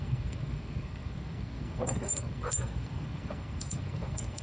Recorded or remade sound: remade